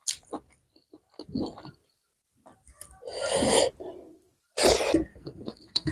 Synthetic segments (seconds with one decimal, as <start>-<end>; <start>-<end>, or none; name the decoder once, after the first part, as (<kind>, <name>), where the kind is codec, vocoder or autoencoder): 5.1-5.9 (codec, SNAC)